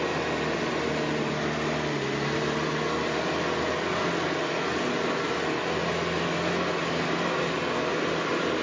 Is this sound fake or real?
real